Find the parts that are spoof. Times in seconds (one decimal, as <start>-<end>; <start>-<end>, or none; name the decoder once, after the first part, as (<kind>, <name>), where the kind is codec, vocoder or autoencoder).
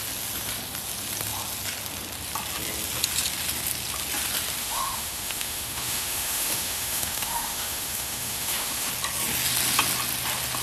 4.6-8.9 (autoencoder, DAC-VAE)